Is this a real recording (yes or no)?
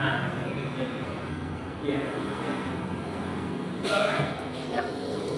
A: no